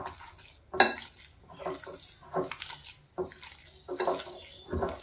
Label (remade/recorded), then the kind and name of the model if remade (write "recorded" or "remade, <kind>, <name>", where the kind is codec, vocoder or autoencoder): recorded